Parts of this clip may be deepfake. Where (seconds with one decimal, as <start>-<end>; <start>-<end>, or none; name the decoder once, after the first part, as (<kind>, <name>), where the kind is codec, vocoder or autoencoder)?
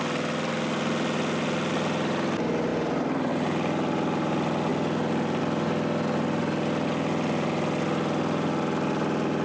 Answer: 2.7-3.3 (vocoder, BigVGAN v2)